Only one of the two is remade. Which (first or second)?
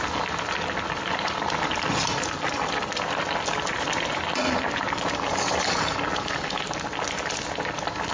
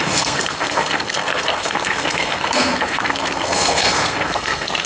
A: second